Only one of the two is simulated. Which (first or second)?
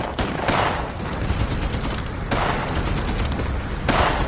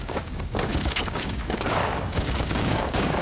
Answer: second